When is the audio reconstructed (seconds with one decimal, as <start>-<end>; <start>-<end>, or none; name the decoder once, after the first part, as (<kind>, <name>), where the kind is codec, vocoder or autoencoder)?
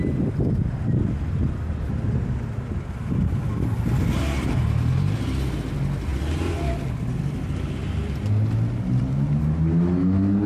none